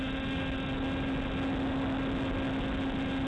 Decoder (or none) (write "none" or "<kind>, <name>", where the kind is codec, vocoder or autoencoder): none